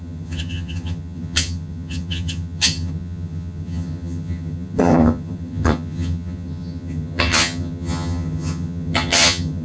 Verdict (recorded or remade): remade